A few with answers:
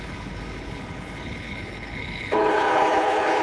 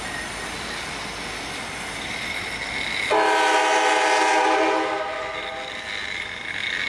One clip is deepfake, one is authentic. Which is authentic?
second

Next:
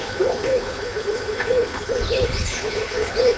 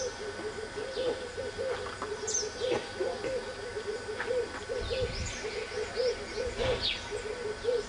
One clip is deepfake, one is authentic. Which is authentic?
second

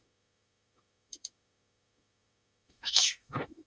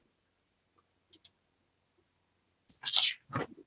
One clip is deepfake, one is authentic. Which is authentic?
second